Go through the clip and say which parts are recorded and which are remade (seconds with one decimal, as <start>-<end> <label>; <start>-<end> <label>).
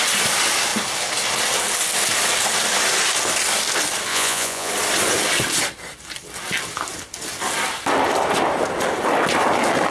0.0-4.1 recorded; 4.1-4.7 remade; 4.7-9.9 recorded